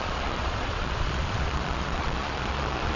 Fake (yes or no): yes